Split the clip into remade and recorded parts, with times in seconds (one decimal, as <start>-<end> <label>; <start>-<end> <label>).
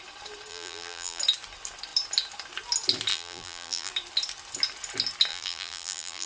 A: 0.0-0.5 recorded; 0.5-1.2 remade; 1.2-3.1 recorded; 3.1-3.9 remade; 3.9-5.3 recorded; 5.3-6.3 remade